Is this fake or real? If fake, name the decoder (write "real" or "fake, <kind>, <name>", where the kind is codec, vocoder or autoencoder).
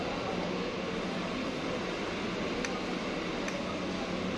real